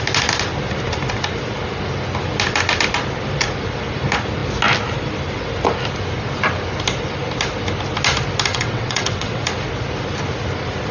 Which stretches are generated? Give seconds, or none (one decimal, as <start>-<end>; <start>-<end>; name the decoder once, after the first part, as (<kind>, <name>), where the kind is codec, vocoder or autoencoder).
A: 8.5-9.4 (vocoder, WaveNeXt)